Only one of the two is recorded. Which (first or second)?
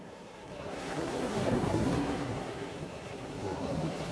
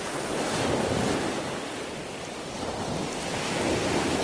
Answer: second